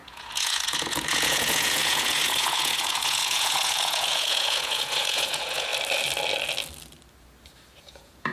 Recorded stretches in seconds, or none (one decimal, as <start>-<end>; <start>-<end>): 5.7-7.8